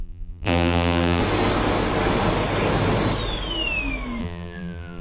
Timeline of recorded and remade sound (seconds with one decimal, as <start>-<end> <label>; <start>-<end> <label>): 0.0-1.2 remade; 1.2-4.2 recorded; 4.2-5.0 remade